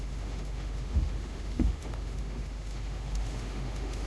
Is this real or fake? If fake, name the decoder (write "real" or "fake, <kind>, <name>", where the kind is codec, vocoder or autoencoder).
fake, autoencoder, DAC-VAE